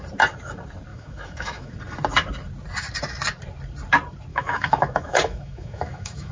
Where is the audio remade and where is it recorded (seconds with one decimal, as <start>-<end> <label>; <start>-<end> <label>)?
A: 0.0-0.9 recorded; 0.9-1.7 remade; 1.7-4.3 recorded; 4.3-6.3 remade